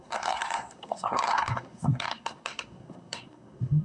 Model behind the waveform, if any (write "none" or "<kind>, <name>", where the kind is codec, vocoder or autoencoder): codec, SNAC